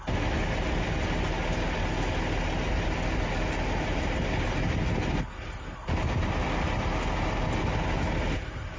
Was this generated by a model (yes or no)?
no